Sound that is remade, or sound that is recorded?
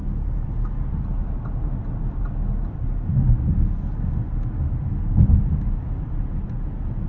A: recorded